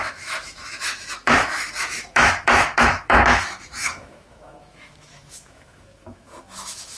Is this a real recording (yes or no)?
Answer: no